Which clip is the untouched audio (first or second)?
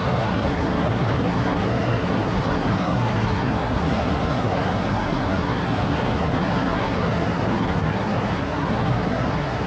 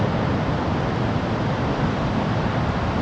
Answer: second